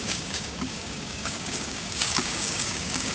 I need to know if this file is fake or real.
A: fake